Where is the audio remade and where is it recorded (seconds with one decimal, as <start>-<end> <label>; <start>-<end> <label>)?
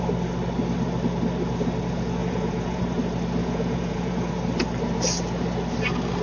0.0-2.2 recorded; 2.2-2.8 remade; 2.8-3.4 recorded; 3.4-4.3 remade; 4.3-6.2 recorded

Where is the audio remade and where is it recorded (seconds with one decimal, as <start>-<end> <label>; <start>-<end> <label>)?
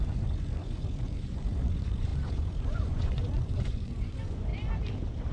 0.0-4.5 remade; 4.5-5.3 recorded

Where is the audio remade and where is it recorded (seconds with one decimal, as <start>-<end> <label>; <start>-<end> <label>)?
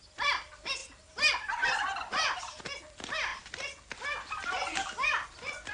0.0-5.7 recorded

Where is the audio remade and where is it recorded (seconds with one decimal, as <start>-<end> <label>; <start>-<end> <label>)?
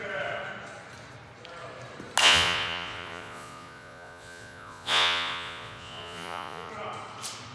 0.0-2.2 recorded; 2.2-6.7 remade; 6.7-7.5 recorded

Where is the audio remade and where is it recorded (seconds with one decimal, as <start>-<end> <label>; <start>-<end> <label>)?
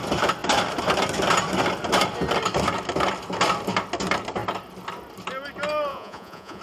0.0-5.9 recorded; 5.9-6.6 remade